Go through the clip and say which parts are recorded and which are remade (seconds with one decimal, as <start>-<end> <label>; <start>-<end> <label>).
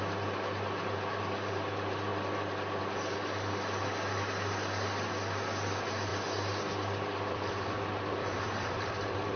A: 0.0-9.4 recorded